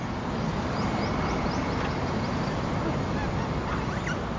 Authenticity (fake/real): real